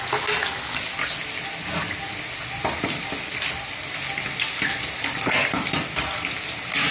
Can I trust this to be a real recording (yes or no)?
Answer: yes